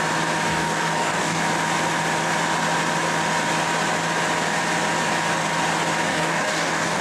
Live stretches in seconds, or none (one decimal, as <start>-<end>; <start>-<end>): 0.0-0.5; 1.4-6.1